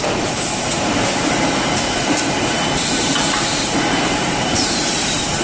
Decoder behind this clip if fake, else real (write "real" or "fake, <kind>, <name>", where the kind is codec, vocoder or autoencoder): fake, vocoder, BigVGAN v2